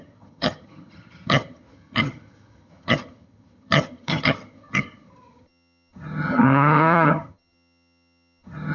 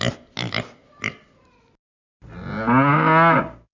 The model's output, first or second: first